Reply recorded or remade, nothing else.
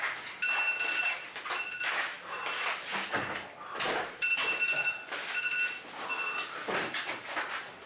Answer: recorded